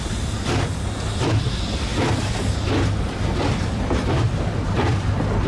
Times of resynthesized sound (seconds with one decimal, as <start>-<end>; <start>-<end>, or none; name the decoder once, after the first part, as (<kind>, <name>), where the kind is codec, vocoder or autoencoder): 1.9-5.5 (vocoder, BigVGAN v2)